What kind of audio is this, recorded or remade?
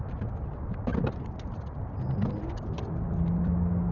recorded